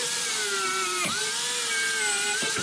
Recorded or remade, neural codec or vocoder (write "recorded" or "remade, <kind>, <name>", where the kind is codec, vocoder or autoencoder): recorded